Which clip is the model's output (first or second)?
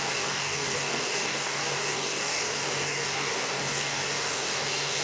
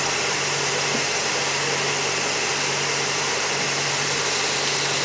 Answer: first